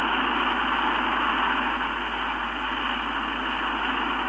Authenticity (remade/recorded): recorded